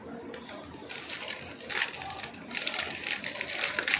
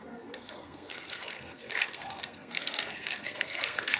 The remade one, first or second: second